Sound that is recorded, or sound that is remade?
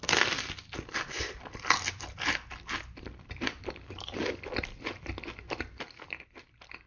recorded